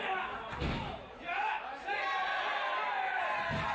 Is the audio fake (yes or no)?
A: no